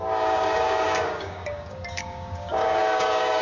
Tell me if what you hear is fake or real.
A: fake